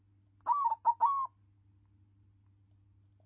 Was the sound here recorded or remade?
recorded